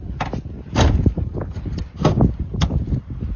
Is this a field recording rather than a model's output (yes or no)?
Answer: yes